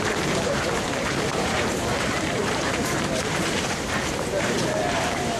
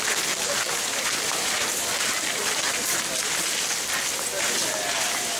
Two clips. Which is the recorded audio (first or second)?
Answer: second